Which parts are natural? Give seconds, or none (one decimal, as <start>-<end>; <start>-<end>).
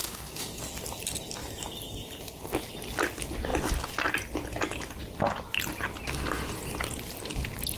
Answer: 0.6-7.8